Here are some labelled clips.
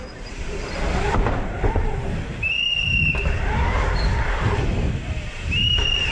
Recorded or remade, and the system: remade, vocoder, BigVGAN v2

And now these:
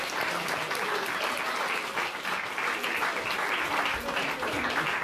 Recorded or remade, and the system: recorded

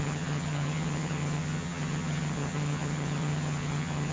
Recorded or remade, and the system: remade, vocoder, HiFi-GAN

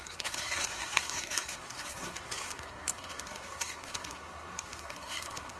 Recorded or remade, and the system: remade, codec, SNAC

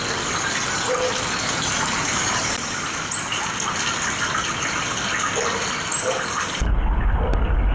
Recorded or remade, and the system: recorded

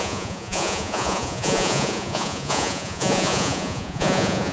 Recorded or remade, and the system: remade, vocoder, Vocos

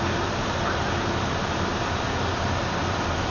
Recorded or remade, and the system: remade, vocoder, BigVGAN v2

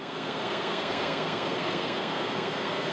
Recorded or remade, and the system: remade, codec, SNAC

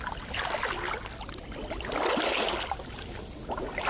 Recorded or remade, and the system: recorded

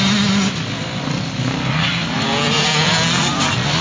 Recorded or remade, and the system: recorded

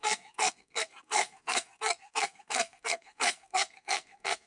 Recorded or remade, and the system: remade, codec, SNAC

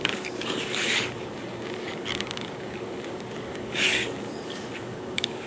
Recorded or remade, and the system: remade, codec, DAC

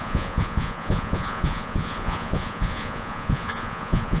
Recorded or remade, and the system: remade, vocoder, Vocos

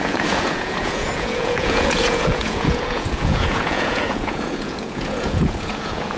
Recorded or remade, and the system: remade, vocoder, Vocos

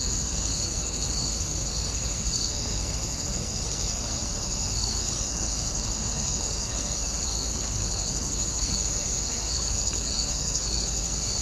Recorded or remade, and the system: remade, codec, SNAC